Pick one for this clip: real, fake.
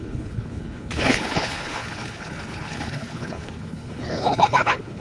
fake